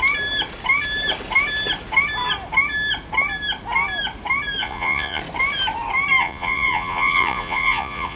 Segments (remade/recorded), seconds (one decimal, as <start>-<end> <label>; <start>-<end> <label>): 0.0-4.6 recorded; 4.6-5.2 remade; 5.2-6.2 recorded; 6.2-8.2 remade